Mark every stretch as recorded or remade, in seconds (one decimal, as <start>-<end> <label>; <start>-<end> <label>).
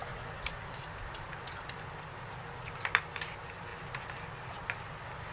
0.0-5.3 recorded